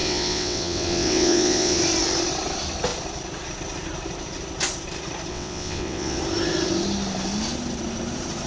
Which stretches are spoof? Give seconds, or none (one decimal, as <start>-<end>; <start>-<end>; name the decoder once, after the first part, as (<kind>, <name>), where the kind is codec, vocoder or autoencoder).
0.0-1.8 (vocoder, WaveNeXt); 5.3-6.2